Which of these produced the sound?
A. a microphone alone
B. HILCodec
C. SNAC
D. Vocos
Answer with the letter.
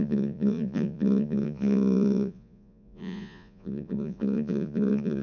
D